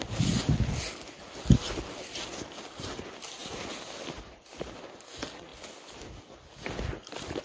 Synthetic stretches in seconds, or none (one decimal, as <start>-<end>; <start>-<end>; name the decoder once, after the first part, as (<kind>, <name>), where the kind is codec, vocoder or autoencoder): 3.4-4.4 (vocoder, BigVGAN v2); 5.5-7.4